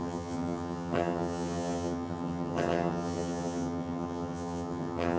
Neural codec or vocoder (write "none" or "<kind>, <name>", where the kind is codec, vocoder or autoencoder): vocoder, HiFi-GAN